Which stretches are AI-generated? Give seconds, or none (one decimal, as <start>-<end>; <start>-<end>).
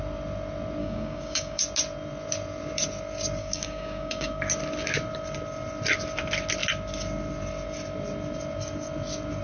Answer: 0.8-1.6; 3.4-4.4